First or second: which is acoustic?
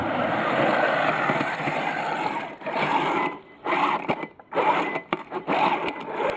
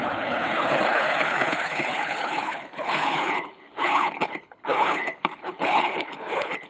first